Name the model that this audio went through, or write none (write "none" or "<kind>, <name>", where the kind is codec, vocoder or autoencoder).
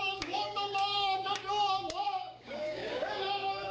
codec, DAC